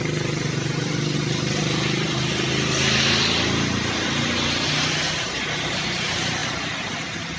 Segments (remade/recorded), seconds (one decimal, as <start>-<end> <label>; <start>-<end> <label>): 0.0-7.4 recorded